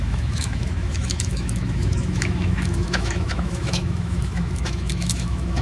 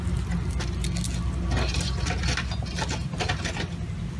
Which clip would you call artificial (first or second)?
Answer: first